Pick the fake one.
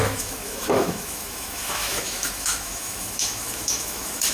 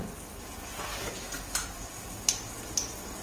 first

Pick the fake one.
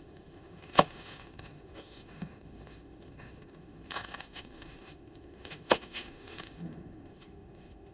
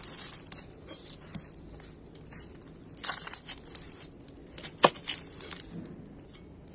first